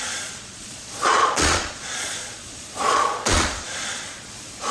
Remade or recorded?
remade